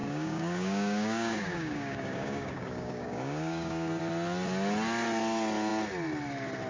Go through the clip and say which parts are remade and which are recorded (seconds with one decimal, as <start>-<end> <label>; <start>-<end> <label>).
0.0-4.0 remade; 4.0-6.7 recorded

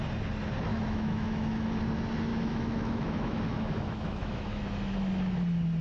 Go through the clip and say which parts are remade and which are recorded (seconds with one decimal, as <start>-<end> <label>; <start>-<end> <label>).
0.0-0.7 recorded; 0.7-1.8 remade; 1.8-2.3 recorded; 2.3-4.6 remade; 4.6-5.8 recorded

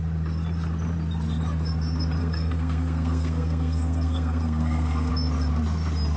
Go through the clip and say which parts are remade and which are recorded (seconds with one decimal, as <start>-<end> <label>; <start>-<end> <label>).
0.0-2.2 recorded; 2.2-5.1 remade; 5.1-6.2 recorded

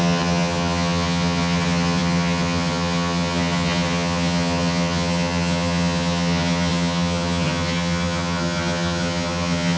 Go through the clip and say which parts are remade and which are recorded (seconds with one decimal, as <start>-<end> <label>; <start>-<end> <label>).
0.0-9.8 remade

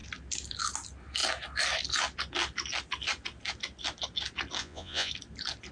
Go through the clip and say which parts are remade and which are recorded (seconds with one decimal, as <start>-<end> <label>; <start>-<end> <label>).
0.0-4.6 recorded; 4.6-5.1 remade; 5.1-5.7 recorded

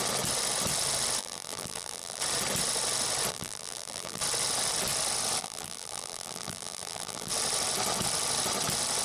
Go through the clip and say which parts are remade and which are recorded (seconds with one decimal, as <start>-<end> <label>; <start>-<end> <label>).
0.0-1.2 recorded; 1.2-2.2 remade; 2.2-3.3 recorded; 3.3-4.2 remade; 4.2-5.4 recorded; 5.4-7.3 remade; 7.3-9.0 recorded